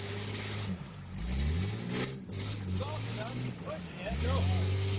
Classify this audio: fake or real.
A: real